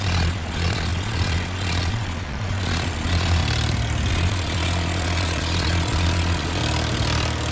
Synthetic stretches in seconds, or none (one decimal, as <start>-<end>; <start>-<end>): 0.0-3.4; 4.1-6.6